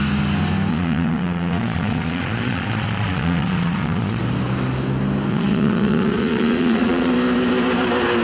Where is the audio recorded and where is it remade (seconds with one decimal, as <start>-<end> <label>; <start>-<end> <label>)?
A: 0.0-0.7 recorded; 0.7-4.2 remade; 4.2-5.3 recorded; 5.3-7.1 remade; 7.1-8.2 recorded

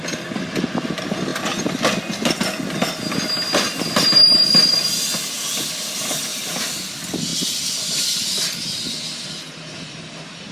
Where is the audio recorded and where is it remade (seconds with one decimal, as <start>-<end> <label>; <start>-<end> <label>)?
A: 0.0-6.3 recorded; 6.3-6.8 remade; 6.8-10.5 recorded

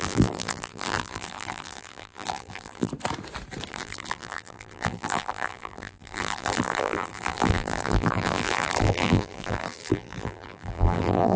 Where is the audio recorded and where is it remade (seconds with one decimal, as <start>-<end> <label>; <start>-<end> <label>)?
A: 0.0-2.9 remade; 2.9-3.7 recorded; 3.7-11.4 remade